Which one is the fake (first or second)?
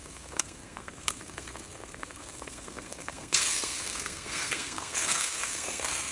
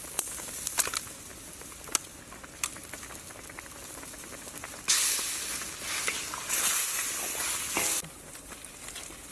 first